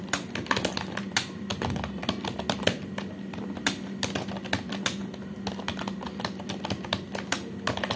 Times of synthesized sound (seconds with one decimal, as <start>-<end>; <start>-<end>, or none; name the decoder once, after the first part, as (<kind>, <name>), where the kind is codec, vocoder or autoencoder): none